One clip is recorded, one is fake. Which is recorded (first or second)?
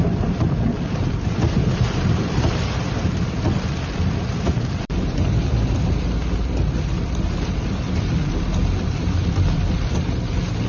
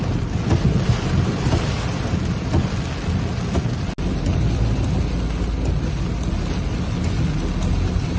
second